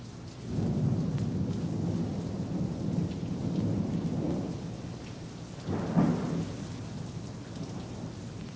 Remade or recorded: recorded